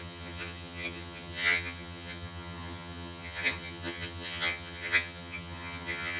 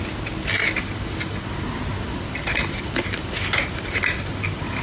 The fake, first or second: first